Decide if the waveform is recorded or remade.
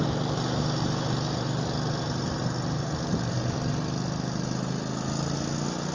recorded